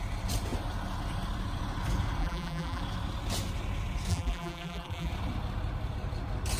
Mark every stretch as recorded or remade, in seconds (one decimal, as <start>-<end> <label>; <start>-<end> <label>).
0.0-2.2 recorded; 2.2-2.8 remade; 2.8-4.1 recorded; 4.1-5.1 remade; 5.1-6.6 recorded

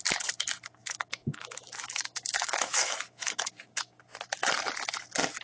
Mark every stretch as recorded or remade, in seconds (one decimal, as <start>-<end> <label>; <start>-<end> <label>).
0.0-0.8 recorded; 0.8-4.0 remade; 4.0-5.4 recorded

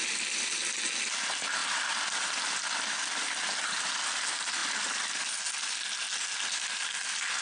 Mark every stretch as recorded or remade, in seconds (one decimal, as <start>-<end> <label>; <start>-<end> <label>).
0.0-7.4 recorded

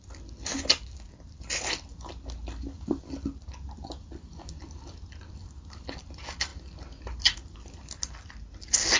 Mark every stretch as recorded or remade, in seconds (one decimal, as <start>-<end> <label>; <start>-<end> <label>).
0.0-9.0 recorded

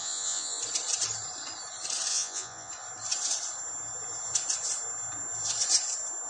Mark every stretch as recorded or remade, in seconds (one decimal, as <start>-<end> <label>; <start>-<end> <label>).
0.0-0.6 remade; 0.6-2.1 recorded; 2.1-2.7 remade; 2.7-6.3 recorded

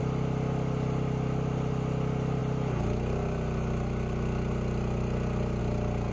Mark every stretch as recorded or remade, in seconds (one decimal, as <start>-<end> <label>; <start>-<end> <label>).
0.0-6.1 recorded

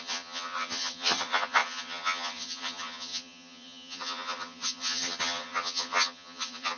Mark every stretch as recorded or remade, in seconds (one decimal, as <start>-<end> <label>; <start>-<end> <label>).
0.0-6.8 remade

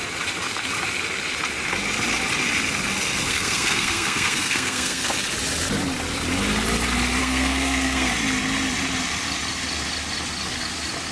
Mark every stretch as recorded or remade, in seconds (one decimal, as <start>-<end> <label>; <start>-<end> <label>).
0.0-3.3 recorded; 3.3-5.1 remade; 5.1-7.2 recorded; 7.2-8.1 remade; 8.1-11.1 recorded